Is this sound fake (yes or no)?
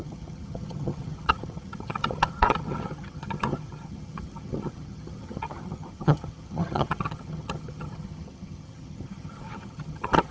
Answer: yes